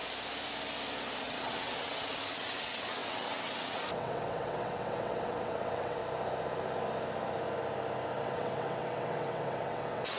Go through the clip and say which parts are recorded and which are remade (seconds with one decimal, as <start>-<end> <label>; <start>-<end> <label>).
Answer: 0.0-1.2 recorded; 1.2-6.0 remade; 6.0-8.2 recorded; 8.2-10.2 remade